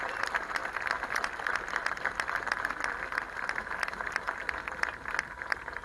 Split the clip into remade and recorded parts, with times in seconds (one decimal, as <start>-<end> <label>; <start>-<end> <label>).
0.0-4.4 remade; 4.4-5.8 recorded